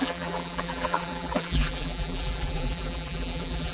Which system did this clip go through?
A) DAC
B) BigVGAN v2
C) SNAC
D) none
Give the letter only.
B